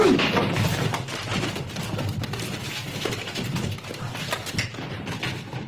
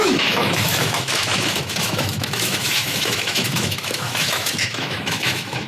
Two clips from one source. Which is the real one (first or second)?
first